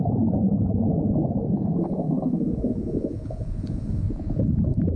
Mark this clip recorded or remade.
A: remade